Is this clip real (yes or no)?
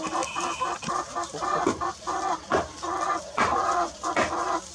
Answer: yes